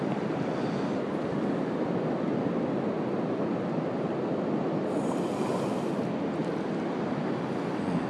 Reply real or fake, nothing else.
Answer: real